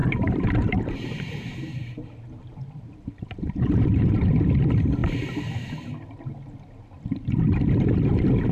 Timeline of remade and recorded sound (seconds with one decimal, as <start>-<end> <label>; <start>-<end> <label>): 0.0-3.8 remade; 3.8-8.5 recorded